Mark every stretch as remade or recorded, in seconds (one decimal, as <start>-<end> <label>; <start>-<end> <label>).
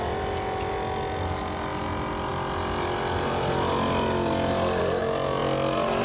0.0-6.0 recorded